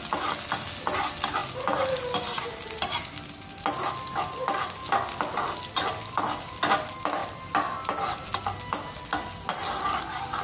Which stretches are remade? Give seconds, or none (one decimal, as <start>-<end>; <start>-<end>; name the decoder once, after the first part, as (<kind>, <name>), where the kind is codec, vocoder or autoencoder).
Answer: none